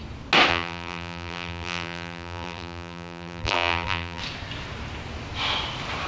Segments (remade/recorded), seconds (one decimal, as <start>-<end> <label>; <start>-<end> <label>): 0.0-0.5 recorded; 0.5-4.2 remade; 4.2-6.1 recorded